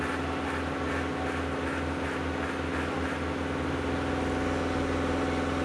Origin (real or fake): real